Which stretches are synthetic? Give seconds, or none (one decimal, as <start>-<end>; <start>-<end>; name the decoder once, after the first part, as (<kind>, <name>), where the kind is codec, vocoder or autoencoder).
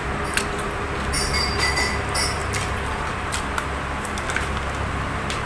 none